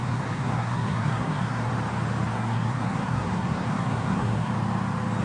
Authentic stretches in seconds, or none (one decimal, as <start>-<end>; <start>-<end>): 1.7-2.3; 4.5-5.2